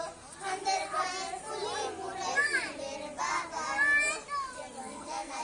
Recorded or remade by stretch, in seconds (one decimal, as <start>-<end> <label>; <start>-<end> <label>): 0.0-4.8 recorded; 4.8-5.4 remade